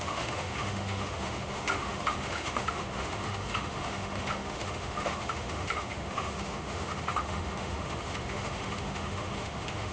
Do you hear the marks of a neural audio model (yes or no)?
yes